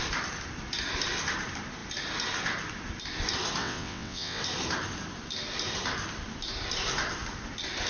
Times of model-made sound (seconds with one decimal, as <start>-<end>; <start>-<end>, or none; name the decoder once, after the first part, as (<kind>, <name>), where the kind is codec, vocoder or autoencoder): 3.6-4.4 (vocoder, WaveNeXt)